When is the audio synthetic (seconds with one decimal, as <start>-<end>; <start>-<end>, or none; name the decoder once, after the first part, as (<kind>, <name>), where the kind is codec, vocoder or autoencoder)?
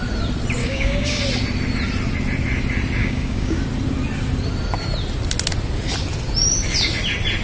0.6-1.2 (codec, DAC); 3.0-3.6